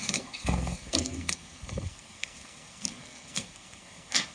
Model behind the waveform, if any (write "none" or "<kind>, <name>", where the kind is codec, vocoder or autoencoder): codec, SNAC